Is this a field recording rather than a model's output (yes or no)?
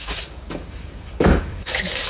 no